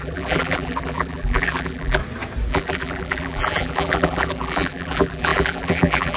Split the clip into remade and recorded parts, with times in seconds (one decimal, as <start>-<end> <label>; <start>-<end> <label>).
0.0-2.0 remade; 2.0-2.5 recorded; 2.5-6.2 remade